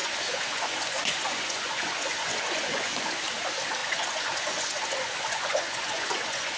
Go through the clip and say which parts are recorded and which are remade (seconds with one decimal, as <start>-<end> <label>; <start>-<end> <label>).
0.0-3.2 remade; 3.2-3.8 recorded; 3.8-6.6 remade